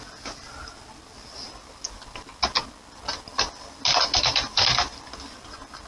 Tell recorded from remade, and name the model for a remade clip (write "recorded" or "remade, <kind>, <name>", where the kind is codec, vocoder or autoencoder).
recorded